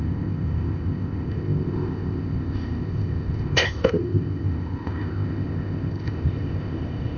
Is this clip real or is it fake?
fake